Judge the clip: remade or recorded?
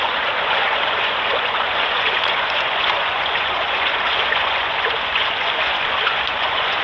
remade